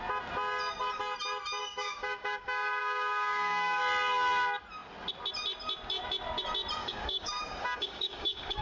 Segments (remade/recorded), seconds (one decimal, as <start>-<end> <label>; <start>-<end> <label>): 0.0-1.6 recorded; 1.6-3.8 remade; 3.8-6.8 recorded; 6.8-8.6 remade